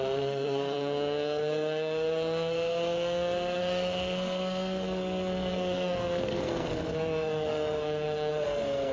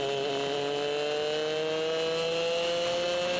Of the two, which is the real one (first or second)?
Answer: second